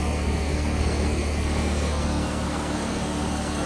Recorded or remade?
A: remade